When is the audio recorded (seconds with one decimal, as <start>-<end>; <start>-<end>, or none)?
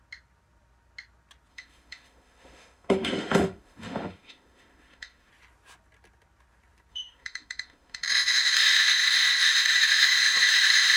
0.0-1.5; 5.3-6.9